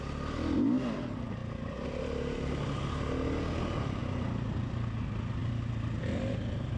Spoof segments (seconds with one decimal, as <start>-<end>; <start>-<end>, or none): none